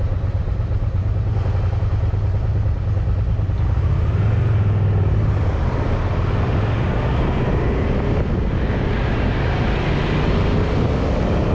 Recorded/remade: recorded